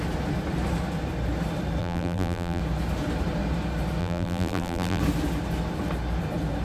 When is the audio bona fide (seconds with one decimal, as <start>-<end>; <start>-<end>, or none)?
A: 0.0-1.8; 2.6-4.0; 5.0-6.6